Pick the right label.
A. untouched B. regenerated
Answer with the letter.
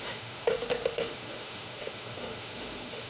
B